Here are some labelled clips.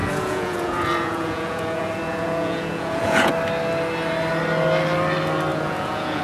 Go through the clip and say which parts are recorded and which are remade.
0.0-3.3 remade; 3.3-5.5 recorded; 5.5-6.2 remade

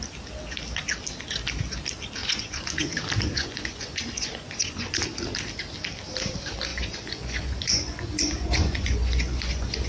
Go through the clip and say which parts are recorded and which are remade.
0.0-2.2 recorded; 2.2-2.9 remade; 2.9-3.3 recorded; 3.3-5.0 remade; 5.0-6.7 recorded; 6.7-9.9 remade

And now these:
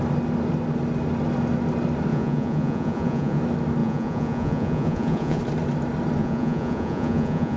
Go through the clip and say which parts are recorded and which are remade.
0.0-2.1 recorded; 2.1-3.4 remade; 3.4-3.8 recorded; 3.8-5.4 remade; 5.4-6.2 recorded; 6.2-7.6 remade

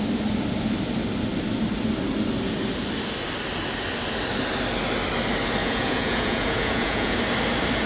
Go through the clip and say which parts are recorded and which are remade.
0.0-5.6 recorded; 5.6-7.2 remade; 7.2-7.9 recorded

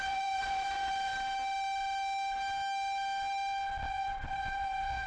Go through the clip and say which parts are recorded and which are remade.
0.0-1.1 remade; 1.1-3.9 recorded; 3.9-5.1 remade